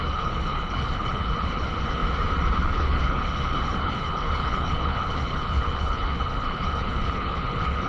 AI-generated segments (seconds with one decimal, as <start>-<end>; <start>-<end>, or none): 0.0-2.0; 2.6-7.9